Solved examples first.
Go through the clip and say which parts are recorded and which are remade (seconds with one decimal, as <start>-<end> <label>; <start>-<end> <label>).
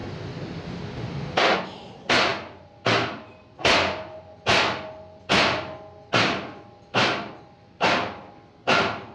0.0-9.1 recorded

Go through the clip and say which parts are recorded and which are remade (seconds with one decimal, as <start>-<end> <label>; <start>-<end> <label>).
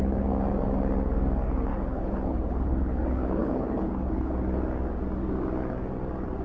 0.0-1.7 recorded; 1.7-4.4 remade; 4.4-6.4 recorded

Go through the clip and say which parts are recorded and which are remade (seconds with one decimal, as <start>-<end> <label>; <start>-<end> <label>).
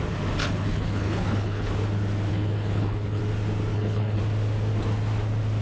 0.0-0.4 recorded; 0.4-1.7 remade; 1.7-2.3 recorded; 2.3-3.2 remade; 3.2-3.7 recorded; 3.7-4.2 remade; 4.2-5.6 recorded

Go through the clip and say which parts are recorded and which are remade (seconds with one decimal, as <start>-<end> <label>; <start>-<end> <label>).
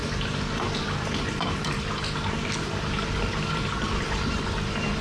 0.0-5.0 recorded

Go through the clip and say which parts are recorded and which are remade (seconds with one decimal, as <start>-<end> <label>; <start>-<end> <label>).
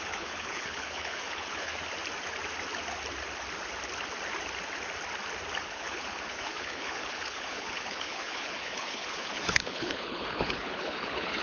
0.0-1.7 remade; 1.7-5.6 recorded; 5.6-11.4 remade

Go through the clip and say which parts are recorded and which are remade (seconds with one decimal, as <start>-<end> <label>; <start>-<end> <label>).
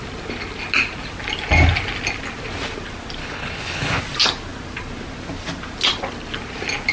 0.0-3.2 recorded; 3.2-4.0 remade; 4.0-6.9 recorded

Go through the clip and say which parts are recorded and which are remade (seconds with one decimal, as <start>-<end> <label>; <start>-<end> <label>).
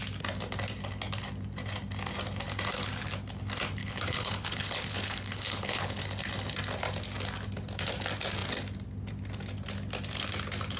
0.0-3.8 recorded; 3.8-6.0 remade; 6.0-10.8 recorded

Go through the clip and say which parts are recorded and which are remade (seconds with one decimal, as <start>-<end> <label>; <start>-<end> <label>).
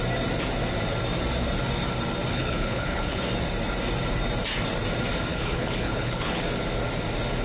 0.0-2.3 recorded; 2.3-3.2 remade; 3.2-5.3 recorded; 5.3-6.4 remade; 6.4-7.4 recorded